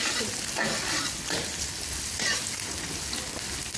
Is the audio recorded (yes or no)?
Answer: yes